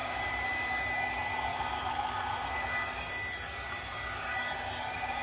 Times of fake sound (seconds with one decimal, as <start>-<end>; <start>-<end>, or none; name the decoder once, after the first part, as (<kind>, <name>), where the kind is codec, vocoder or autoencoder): 1.5-2.3 (codec, DAC)